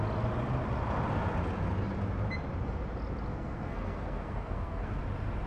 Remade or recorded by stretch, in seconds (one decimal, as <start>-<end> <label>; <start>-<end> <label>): 0.0-3.3 recorded; 3.3-5.0 remade; 5.0-5.5 recorded